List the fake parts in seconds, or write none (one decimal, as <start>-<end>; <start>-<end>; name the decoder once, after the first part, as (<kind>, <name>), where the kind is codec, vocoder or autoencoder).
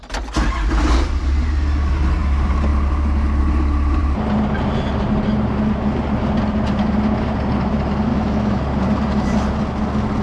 8.1-8.6 (autoencoder, DAC-VAE)